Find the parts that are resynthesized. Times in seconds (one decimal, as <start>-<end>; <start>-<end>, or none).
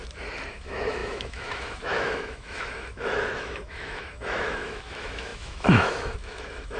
0.5-6.8